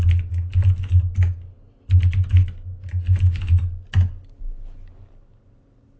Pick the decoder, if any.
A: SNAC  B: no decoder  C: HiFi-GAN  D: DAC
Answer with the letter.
B